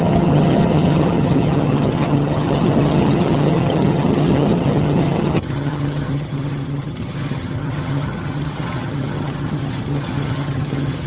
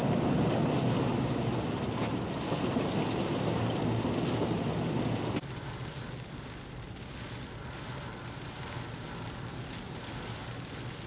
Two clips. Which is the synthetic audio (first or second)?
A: first